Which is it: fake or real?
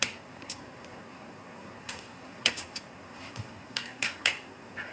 fake